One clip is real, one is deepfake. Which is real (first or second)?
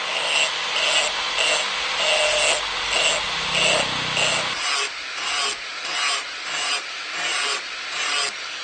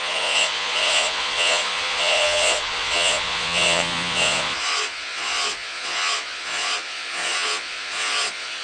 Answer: first